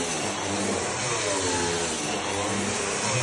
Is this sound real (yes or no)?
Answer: yes